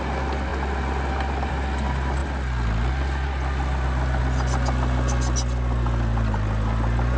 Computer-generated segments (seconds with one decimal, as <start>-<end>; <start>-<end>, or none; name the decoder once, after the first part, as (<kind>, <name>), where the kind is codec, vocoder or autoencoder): none